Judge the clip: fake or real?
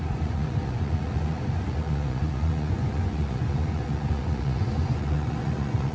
fake